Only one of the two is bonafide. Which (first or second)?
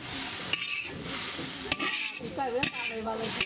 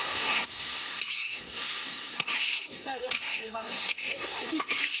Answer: first